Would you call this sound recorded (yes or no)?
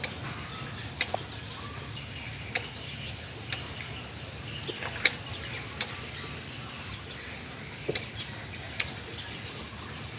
yes